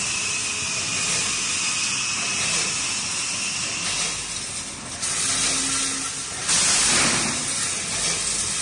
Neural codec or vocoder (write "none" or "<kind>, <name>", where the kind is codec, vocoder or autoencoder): none